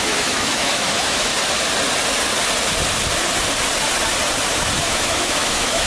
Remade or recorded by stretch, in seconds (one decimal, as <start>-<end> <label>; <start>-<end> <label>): 0.0-1.3 remade; 1.3-4.8 recorded; 4.8-5.9 remade